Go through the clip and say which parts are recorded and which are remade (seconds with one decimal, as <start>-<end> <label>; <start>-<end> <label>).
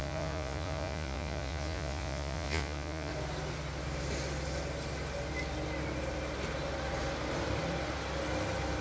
0.0-3.1 remade; 3.1-8.8 recorded